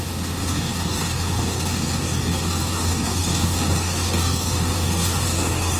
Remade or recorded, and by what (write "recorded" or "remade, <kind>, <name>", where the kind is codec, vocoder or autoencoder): remade, codec, DAC